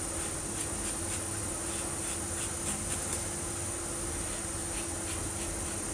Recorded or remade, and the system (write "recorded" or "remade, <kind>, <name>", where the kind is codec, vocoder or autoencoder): recorded